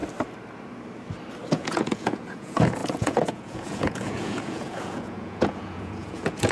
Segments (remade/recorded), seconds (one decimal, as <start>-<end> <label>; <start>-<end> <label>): 0.0-1.5 recorded; 1.5-6.5 remade

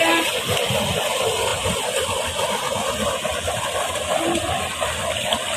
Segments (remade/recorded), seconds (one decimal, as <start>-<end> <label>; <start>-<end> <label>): 0.0-5.6 recorded

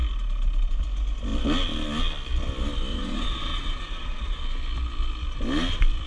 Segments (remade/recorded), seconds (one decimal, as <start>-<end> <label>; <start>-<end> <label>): 0.0-2.9 recorded; 2.9-4.4 remade; 4.4-6.1 recorded

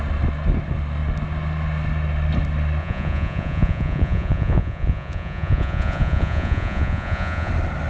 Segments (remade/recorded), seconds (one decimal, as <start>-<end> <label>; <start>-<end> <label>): 0.0-2.8 recorded; 2.8-7.5 remade; 7.5-7.9 recorded

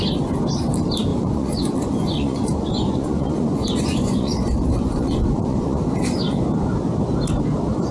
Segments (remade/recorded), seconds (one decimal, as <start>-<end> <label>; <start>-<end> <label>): 0.0-1.1 recorded; 1.1-5.8 remade; 5.8-7.9 recorded

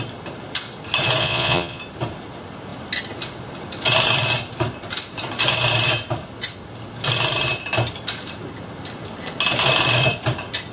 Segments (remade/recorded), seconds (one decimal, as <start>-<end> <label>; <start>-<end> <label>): 0.0-1.2 recorded; 1.2-1.8 remade; 1.8-10.7 recorded

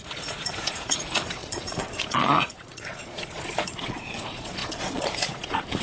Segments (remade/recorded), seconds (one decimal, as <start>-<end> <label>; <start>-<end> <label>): 0.0-5.8 remade